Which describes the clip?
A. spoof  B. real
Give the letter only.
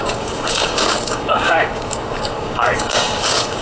A